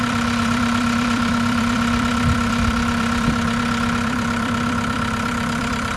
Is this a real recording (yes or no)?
no